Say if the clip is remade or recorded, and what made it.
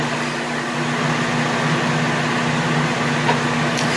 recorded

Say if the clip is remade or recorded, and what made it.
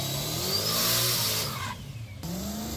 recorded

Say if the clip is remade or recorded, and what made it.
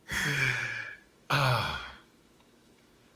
remade, autoencoder, DAC-VAE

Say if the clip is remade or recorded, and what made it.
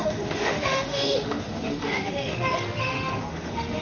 remade, autoencoder, DAC-VAE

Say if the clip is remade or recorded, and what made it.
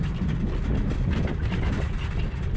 recorded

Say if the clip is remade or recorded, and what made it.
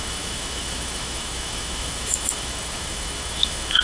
remade, autoencoder, DAC-VAE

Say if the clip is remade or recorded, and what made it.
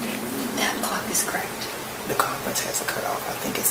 recorded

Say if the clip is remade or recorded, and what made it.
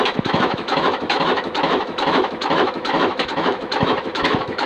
remade, autoencoder, DAC-VAE